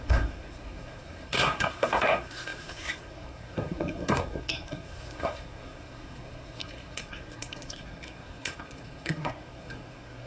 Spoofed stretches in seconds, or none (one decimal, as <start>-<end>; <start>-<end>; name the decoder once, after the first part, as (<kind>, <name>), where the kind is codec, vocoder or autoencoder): 0.0-10.3 (codec, SNAC)